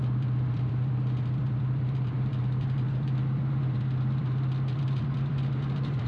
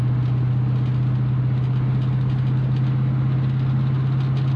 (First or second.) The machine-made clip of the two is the first